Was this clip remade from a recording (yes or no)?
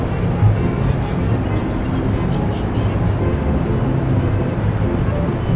no